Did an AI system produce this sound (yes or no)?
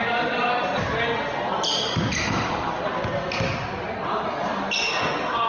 no